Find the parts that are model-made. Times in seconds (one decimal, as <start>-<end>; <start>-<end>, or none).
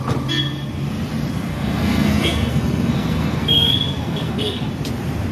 1.5-4.7